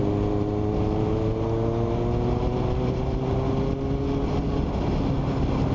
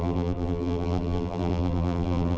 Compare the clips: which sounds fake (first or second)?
second